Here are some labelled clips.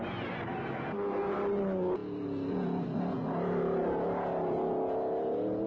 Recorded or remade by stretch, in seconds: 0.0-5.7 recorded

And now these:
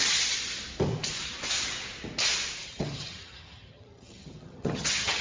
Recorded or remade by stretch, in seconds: 0.0-2.6 recorded; 2.6-5.2 remade

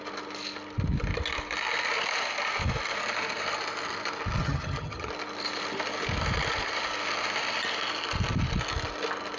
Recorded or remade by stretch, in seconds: 0.0-4.4 recorded; 4.4-5.1 remade; 5.1-9.4 recorded

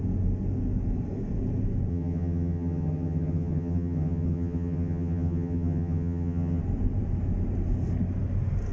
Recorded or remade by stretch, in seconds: 0.0-1.9 recorded; 1.9-6.6 remade; 6.6-8.7 recorded

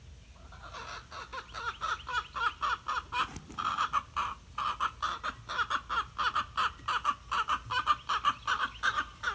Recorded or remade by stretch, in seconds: 0.0-9.3 recorded

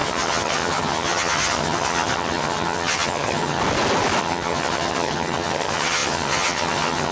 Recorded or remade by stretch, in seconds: 0.0-3.6 remade; 3.6-4.2 recorded; 4.2-7.1 remade

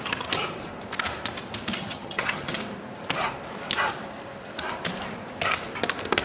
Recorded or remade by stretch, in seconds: 0.0-1.8 recorded; 1.8-2.5 remade; 2.5-6.2 recorded

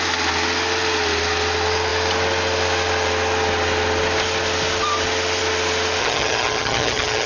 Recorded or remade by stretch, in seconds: 0.0-6.0 recorded; 6.0-7.3 remade